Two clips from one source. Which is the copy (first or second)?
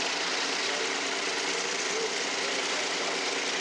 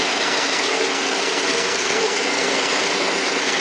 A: second